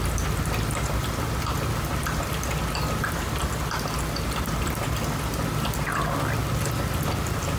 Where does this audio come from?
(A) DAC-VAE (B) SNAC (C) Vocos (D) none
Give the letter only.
D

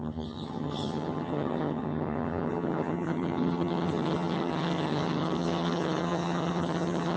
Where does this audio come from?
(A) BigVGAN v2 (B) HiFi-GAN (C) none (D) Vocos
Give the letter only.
B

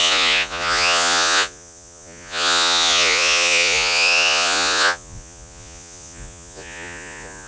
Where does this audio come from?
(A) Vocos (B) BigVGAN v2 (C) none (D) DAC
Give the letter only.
A